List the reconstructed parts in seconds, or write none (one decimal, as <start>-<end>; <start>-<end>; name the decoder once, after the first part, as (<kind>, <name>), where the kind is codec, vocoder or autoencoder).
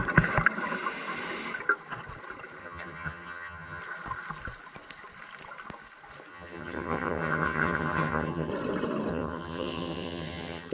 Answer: 2.6-3.8 (vocoder, HiFi-GAN); 6.3-8.5; 9.1-10.7